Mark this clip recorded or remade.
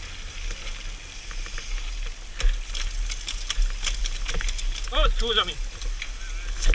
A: recorded